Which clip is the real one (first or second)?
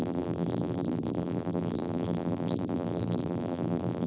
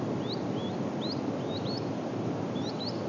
second